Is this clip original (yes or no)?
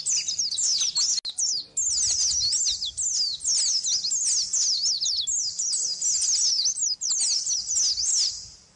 yes